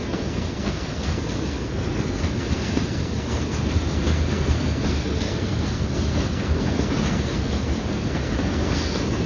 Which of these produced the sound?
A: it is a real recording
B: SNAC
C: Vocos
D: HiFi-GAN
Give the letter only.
B